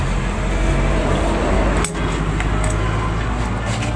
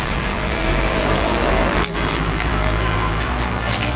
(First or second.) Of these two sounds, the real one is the first